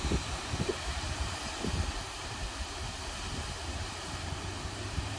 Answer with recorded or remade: remade